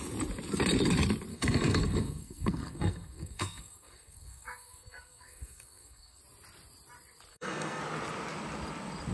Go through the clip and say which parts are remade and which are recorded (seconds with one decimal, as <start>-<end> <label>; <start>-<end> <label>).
0.0-1.3 recorded; 1.3-6.2 remade; 6.2-7.3 recorded; 7.3-7.8 remade; 7.8-9.1 recorded

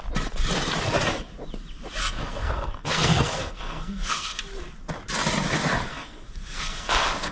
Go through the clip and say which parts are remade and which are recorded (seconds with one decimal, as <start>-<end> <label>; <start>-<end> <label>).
0.0-2.0 recorded; 2.0-4.4 remade; 4.4-5.9 recorded; 5.9-7.3 remade

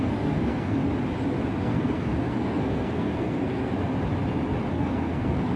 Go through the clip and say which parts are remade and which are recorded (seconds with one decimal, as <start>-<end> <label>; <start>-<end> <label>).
0.0-0.8 remade; 0.8-1.6 recorded; 1.6-3.9 remade; 3.9-4.7 recorded; 4.7-5.6 remade

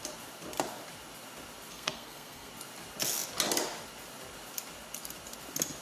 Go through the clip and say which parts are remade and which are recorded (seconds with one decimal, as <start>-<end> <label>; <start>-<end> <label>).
0.0-1.7 recorded; 1.7-2.5 remade; 2.5-5.8 recorded

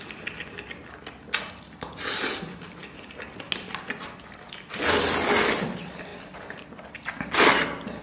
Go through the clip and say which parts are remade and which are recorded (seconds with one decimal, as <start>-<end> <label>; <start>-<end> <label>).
0.0-8.0 recorded

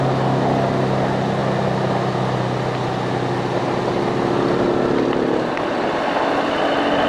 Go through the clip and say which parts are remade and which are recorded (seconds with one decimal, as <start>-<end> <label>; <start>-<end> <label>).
0.0-7.1 recorded